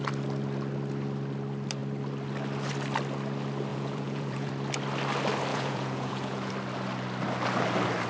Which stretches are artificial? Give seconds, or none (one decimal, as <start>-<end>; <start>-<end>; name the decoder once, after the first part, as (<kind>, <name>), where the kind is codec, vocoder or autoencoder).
3.7-4.5 (vocoder, Vocos); 5.5-6.5